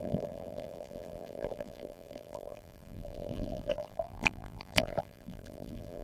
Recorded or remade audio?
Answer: remade